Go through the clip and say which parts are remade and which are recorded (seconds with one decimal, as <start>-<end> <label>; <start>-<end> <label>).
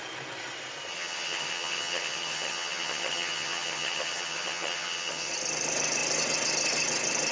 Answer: 0.0-0.9 recorded; 0.9-5.3 remade; 5.3-7.3 recorded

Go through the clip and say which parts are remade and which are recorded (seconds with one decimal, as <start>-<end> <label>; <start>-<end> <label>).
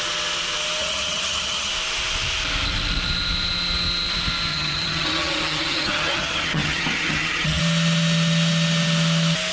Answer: 0.0-0.8 recorded; 0.8-1.7 remade; 1.7-4.5 recorded; 4.5-7.6 remade; 7.6-9.5 recorded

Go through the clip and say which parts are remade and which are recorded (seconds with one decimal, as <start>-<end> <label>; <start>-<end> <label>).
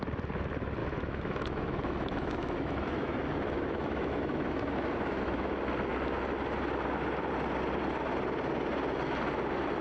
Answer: 0.0-0.8 recorded; 0.8-5.5 remade; 5.5-9.8 recorded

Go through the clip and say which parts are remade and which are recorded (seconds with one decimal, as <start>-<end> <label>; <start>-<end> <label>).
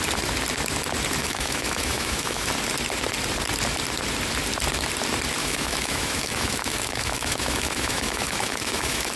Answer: 0.0-1.2 recorded; 1.2-2.5 remade; 2.5-5.4 recorded; 5.4-9.2 remade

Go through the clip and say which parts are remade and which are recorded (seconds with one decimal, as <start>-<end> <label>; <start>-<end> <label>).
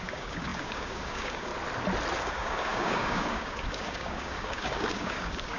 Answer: 0.0-1.5 remade; 1.5-2.2 recorded; 2.2-5.6 remade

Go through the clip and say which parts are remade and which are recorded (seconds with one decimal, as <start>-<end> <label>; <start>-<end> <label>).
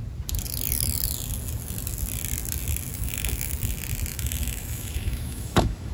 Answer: 0.0-2.9 recorded; 2.9-3.5 remade; 3.5-4.1 recorded; 4.1-5.9 remade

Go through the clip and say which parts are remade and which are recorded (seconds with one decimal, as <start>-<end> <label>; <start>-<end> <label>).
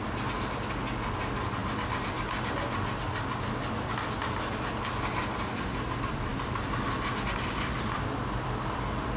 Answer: 0.0-9.2 recorded